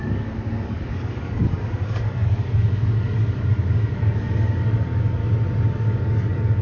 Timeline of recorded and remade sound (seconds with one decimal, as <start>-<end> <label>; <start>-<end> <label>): 0.0-5.2 remade; 5.2-5.7 recorded; 5.7-6.6 remade

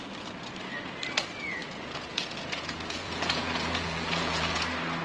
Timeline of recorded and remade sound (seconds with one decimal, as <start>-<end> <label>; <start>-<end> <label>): 0.0-1.6 recorded; 1.6-4.6 remade; 4.6-5.0 recorded

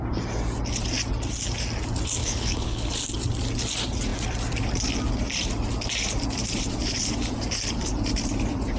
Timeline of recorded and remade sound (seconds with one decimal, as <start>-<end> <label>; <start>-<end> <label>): 0.0-2.2 recorded; 2.2-2.9 remade; 2.9-8.8 recorded